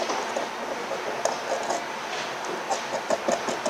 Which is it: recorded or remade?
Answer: recorded